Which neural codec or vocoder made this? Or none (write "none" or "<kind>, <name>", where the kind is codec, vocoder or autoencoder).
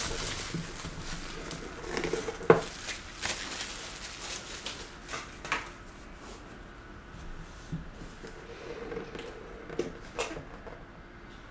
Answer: none